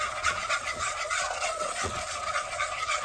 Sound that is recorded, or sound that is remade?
remade